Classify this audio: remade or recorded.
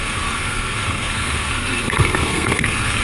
remade